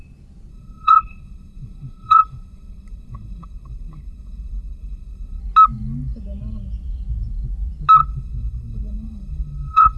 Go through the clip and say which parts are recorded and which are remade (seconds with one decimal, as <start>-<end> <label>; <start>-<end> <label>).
0.0-0.5 recorded; 0.5-5.4 remade; 5.4-8.0 recorded; 8.0-10.0 remade